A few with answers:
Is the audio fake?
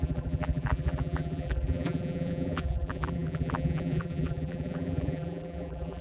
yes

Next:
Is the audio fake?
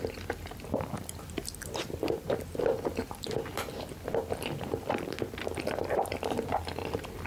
yes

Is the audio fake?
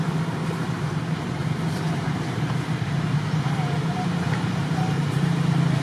yes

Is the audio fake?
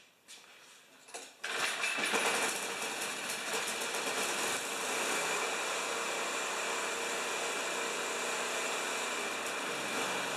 no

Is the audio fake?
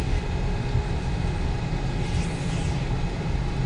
no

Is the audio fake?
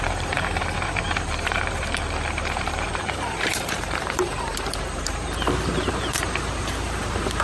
yes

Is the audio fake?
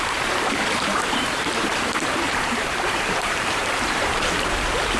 yes